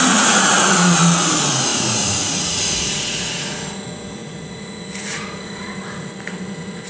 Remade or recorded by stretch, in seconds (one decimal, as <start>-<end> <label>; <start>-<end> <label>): 0.0-6.9 remade